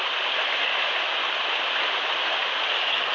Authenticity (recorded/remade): recorded